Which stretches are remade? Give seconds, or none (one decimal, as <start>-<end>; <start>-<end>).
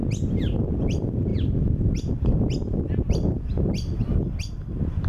0.6-5.1